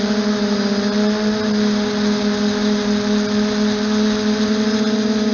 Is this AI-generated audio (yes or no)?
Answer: no